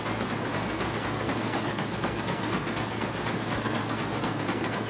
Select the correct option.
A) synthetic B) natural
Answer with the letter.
A